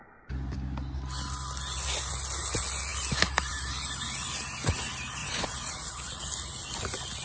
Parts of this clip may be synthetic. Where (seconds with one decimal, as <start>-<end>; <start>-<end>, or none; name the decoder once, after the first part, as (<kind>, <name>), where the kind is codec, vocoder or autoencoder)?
5.2-6.3 (vocoder, Vocos)